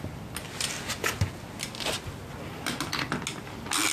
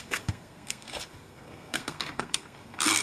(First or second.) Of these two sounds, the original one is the first